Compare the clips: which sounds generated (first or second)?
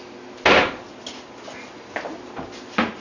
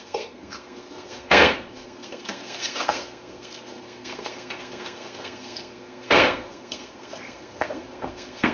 second